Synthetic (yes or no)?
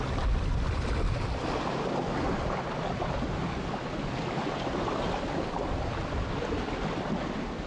no